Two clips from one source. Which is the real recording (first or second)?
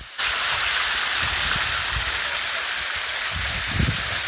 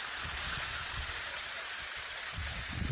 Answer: first